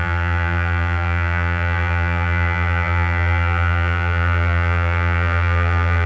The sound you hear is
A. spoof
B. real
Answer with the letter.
A